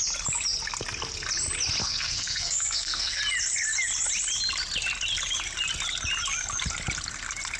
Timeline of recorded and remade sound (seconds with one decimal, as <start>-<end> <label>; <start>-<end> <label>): 0.0-1.8 recorded; 1.8-3.2 remade; 3.2-7.6 recorded